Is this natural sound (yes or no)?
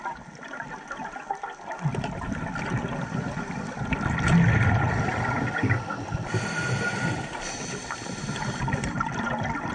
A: yes